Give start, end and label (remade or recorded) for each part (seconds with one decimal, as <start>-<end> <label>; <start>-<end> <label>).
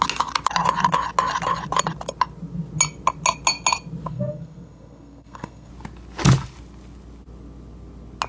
0.0-4.1 recorded; 4.1-5.7 remade; 5.7-8.3 recorded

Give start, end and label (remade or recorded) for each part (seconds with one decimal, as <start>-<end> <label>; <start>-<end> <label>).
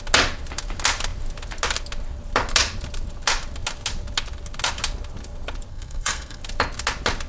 0.0-5.7 recorded; 5.7-6.4 remade; 6.4-7.3 recorded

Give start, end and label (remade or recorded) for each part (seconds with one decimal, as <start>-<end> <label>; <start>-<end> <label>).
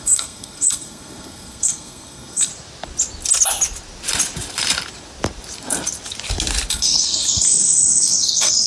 0.0-2.5 remade; 2.5-6.7 recorded; 6.7-8.7 remade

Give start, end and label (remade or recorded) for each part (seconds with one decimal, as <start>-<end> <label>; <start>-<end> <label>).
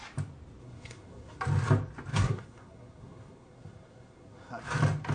0.0-0.6 recorded; 0.6-1.4 remade; 1.4-2.1 recorded; 2.1-4.6 remade; 4.6-5.1 recorded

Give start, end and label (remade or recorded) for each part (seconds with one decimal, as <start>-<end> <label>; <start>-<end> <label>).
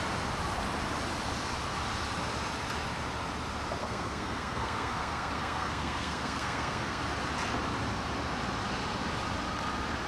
0.0-3.8 recorded; 3.8-7.0 remade; 7.0-10.1 recorded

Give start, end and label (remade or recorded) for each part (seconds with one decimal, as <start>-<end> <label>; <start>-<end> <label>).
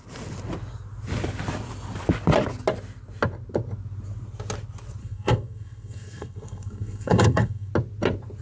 0.0-5.0 recorded; 5.0-7.7 remade; 7.7-8.4 recorded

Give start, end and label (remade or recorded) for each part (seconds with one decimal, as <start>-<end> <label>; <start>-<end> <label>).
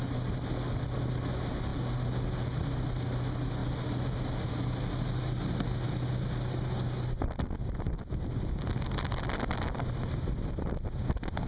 0.0-11.5 recorded